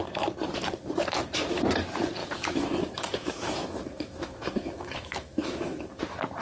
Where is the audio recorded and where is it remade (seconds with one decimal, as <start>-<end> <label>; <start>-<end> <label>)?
0.0-2.2 recorded; 2.2-6.0 remade; 6.0-6.4 recorded

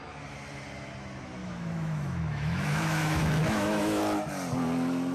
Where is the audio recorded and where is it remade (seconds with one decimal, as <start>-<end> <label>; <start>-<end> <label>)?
0.0-1.4 recorded; 1.4-4.0 remade; 4.0-5.1 recorded

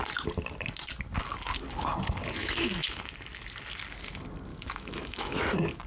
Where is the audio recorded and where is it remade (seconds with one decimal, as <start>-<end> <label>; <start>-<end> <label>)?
0.0-2.4 recorded; 2.4-3.0 remade; 3.0-4.5 recorded; 4.5-5.4 remade; 5.4-5.9 recorded

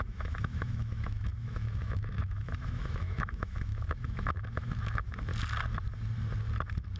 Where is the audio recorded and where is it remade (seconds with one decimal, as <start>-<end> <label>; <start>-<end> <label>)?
0.0-5.3 remade; 5.3-7.0 recorded

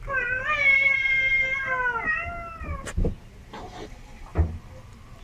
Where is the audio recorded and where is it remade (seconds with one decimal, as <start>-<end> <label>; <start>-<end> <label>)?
0.0-5.2 recorded

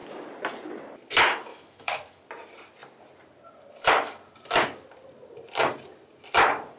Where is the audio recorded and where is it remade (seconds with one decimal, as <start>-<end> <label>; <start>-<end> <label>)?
0.0-1.5 recorded; 1.5-2.2 remade; 2.2-6.8 recorded